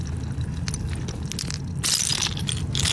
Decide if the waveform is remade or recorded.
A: recorded